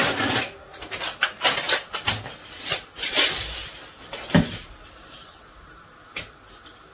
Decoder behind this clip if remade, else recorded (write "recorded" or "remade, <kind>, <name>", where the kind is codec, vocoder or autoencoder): recorded